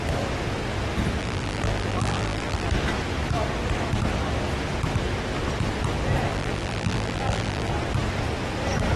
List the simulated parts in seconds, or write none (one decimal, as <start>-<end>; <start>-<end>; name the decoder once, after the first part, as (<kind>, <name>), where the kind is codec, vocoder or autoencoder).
1.2-2.7 (vocoder, BigVGAN v2); 6.3-7.7

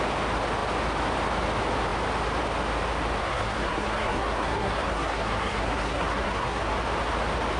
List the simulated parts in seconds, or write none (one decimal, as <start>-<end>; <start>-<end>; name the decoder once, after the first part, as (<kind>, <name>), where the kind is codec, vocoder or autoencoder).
3.2-6.6 (codec, SNAC)

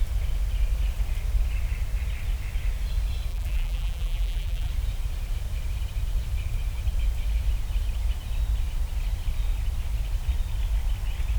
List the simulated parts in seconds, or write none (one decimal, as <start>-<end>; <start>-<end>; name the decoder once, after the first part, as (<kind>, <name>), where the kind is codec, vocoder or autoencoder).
3.3-4.7 (vocoder, BigVGAN v2)

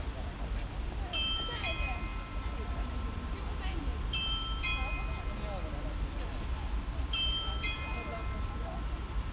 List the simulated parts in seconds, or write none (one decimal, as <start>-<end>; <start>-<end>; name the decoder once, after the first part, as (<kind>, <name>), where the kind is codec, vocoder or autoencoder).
0.0-4.7 (vocoder, BigVGAN v2); 7.0-9.3